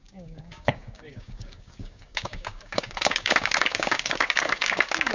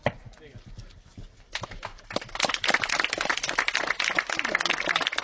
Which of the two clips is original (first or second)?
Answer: second